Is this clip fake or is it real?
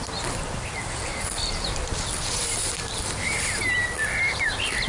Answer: real